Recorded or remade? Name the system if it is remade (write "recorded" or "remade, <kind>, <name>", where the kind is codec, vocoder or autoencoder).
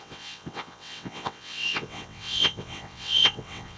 remade, vocoder, WaveNeXt